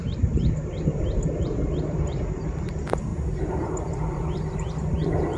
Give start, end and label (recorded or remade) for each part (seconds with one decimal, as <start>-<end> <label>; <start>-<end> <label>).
0.0-5.4 remade